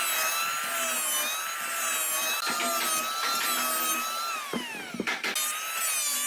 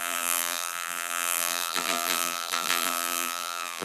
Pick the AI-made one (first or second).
second